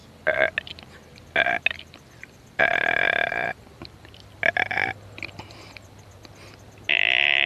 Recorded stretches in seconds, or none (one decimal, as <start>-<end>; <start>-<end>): 0.0-7.5